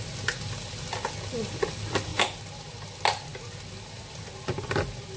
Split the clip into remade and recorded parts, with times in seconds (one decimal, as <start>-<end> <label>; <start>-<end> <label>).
0.0-5.2 recorded